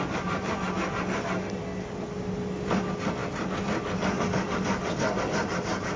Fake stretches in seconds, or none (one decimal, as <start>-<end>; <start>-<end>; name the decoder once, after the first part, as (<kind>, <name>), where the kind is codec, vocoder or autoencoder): none

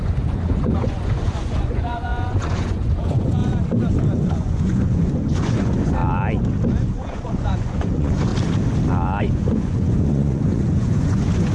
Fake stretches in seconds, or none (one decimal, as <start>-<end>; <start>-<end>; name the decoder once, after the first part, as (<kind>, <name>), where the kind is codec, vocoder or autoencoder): 0.0-3.4 (vocoder, Vocos); 4.3-6.0; 6.8-8.3; 9.2-11.5

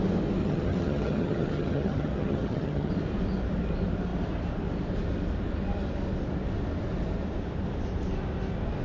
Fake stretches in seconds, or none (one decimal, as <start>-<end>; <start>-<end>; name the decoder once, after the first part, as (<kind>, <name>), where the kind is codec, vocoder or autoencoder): 0.4-2.9 (vocoder, HiFi-GAN)